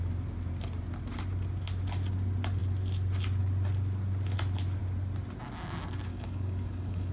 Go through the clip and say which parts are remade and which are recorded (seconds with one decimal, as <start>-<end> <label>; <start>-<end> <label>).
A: 0.0-6.1 recorded; 6.1-7.1 remade